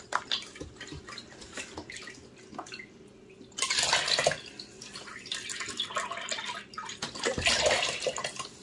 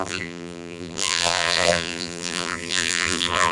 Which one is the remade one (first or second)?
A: second